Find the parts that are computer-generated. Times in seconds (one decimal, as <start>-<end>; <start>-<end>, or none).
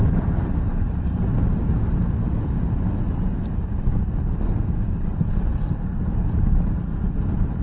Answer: none